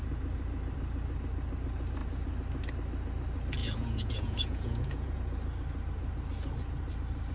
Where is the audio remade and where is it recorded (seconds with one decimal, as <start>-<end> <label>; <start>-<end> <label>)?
0.0-3.6 recorded; 3.6-5.2 remade; 5.2-7.3 recorded